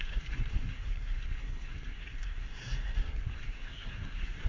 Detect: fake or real fake